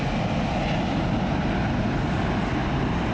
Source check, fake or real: real